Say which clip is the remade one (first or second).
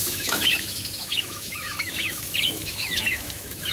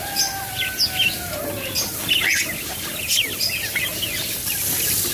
first